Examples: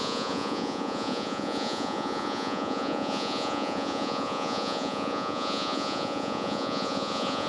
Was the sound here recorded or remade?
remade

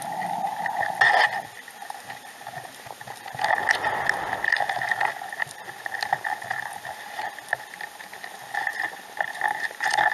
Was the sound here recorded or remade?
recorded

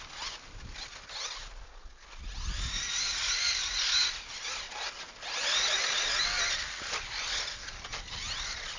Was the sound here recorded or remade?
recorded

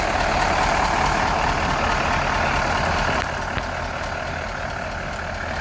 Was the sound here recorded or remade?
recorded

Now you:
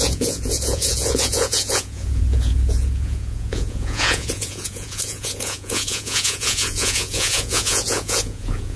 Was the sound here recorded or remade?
remade